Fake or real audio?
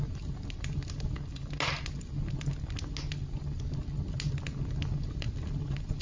real